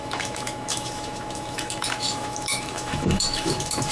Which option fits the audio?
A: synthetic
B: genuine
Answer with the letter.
A